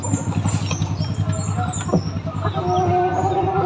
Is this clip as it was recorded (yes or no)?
yes